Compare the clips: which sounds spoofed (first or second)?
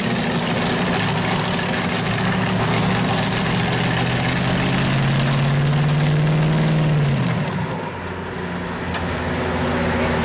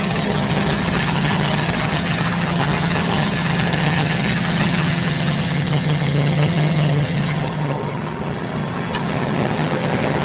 second